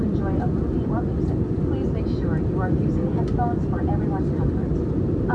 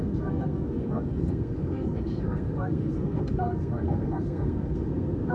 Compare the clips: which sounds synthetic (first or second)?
second